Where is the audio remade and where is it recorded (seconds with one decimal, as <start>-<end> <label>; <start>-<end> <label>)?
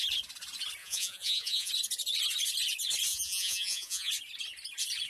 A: 0.0-0.8 recorded; 0.8-1.7 remade; 1.7-3.1 recorded; 3.1-4.1 remade; 4.1-5.1 recorded